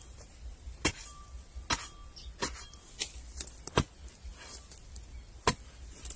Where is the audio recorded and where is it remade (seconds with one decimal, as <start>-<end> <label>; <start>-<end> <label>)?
0.0-6.2 recorded